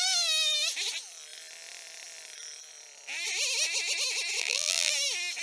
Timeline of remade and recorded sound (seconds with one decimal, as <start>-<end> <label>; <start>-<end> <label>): 0.0-4.4 recorded; 4.4-4.9 remade; 4.9-5.4 recorded